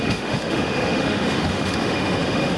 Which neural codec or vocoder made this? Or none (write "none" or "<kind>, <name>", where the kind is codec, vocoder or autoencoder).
autoencoder, DAC-VAE